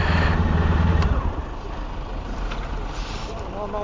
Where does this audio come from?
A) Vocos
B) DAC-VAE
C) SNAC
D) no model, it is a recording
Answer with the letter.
D